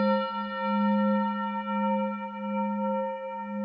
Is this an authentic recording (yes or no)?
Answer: yes